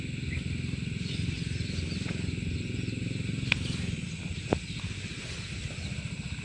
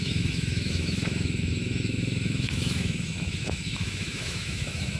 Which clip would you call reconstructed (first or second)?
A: second